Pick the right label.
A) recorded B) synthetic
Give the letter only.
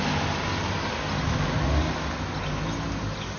A